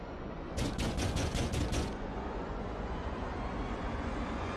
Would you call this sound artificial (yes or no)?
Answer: yes